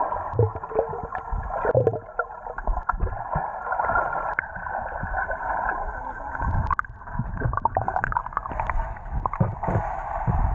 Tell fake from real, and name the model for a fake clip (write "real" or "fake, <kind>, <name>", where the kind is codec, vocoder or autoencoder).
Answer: real